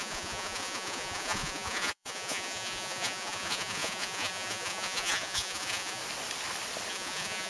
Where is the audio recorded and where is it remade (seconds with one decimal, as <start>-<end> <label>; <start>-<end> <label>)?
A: 0.0-6.0 remade; 6.0-6.9 recorded; 6.9-7.5 remade